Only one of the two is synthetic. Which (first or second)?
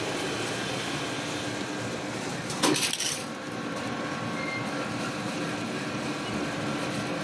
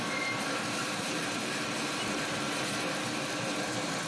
second